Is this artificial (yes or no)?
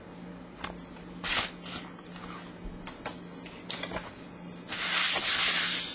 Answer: no